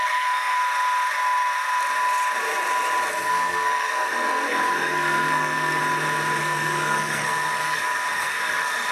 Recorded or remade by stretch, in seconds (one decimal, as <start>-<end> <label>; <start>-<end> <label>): 0.0-0.6 remade; 0.6-3.1 recorded; 3.1-5.8 remade; 5.8-6.4 recorded; 6.4-8.9 remade